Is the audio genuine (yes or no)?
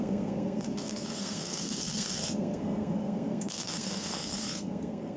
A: no